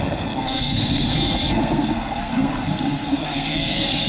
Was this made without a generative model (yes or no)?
no